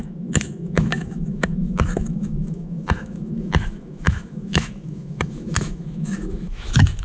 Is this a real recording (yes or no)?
no